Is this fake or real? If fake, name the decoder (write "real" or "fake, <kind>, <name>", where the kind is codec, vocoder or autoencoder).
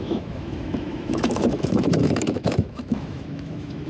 fake, autoencoder, DAC-VAE